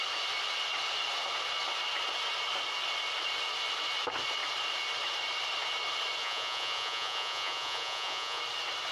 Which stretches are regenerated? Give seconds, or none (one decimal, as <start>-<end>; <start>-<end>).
6.2-8.4